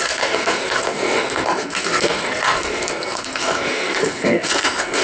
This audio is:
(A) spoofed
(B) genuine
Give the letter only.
A